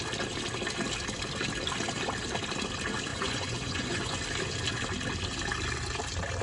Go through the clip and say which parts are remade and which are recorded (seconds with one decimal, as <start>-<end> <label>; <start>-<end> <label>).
0.0-3.1 recorded; 3.1-4.2 remade; 4.2-6.4 recorded